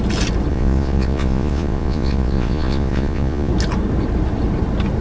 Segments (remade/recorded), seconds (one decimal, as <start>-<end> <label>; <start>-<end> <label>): 0.0-0.5 recorded; 0.5-3.5 remade; 3.5-5.0 recorded